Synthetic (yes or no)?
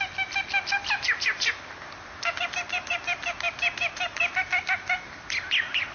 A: no